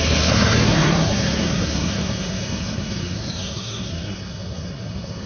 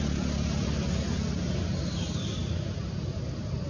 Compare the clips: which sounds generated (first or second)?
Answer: first